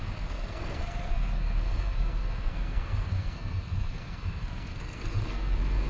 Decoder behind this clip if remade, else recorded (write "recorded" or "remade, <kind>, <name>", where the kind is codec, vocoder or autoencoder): remade, codec, SNAC